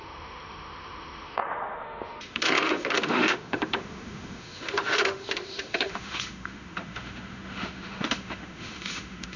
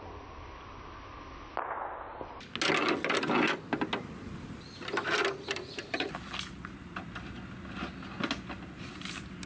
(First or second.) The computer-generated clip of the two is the first